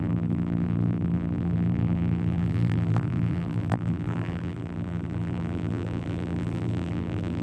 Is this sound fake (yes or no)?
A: yes